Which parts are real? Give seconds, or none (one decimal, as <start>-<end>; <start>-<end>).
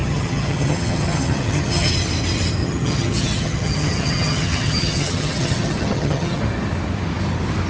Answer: 1.9-2.6; 6.4-7.7